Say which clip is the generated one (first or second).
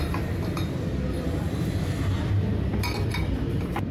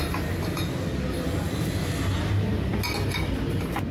first